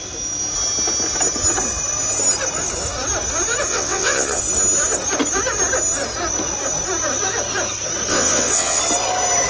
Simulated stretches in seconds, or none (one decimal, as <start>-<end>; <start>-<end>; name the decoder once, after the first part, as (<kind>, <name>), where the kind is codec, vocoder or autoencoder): 3.7-4.4 (vocoder, WaveNeXt); 8.1-8.8